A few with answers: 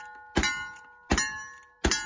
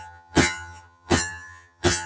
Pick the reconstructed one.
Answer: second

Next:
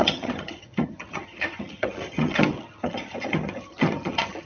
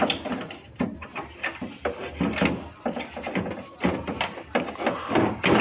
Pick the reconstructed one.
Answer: first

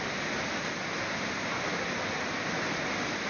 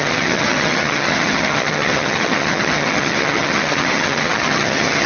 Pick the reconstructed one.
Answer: second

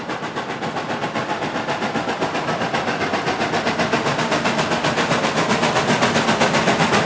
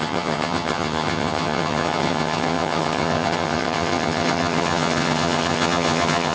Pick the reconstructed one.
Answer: second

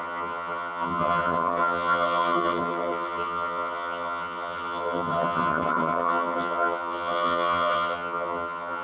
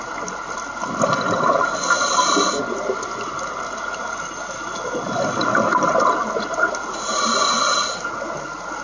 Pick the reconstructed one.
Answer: first